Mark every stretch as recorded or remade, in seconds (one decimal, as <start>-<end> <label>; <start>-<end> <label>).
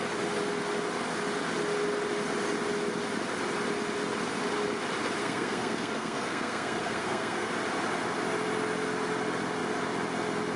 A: 0.0-5.2 recorded; 5.2-7.5 remade; 7.5-10.6 recorded